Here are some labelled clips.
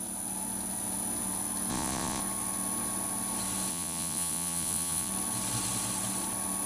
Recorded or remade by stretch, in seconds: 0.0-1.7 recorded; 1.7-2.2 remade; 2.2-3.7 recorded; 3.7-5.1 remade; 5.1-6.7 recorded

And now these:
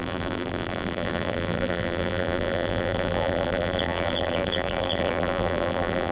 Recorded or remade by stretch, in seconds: 0.0-6.1 remade

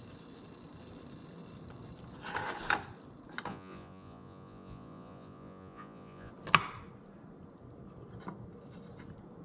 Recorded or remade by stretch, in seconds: 0.0-3.5 recorded; 3.5-6.3 remade; 6.3-9.4 recorded